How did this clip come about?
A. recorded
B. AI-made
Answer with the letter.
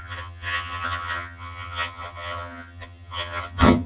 B